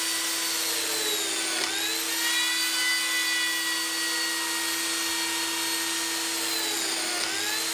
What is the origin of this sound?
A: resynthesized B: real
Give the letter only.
B